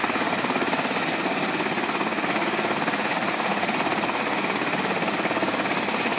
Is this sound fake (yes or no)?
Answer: no